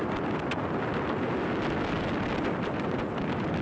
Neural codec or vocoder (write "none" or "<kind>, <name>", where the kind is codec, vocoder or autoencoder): none